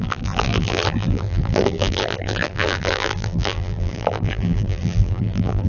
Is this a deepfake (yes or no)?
yes